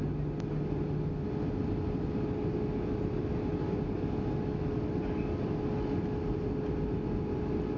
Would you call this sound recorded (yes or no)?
yes